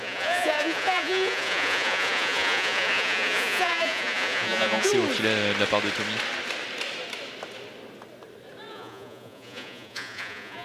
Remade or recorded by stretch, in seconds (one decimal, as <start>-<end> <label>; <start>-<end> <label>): 0.0-4.9 remade; 4.9-8.7 recorded; 8.7-10.6 remade